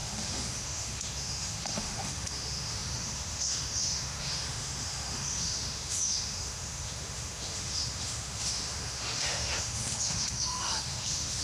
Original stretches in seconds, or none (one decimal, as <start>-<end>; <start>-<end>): none